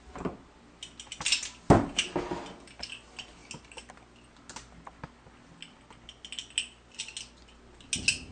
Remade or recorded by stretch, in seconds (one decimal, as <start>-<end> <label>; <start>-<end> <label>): 0.0-8.3 recorded